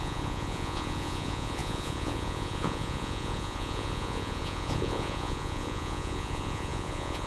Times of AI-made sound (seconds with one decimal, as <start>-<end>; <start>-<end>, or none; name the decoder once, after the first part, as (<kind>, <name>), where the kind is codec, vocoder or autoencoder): 0.0-7.3 (vocoder, Vocos)